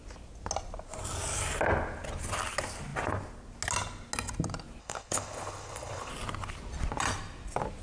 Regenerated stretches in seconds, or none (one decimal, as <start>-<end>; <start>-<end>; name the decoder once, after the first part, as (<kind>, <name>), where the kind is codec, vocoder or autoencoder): 4.8-6.1 (codec, HILCodec)